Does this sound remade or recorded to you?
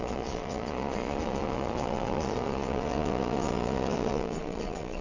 remade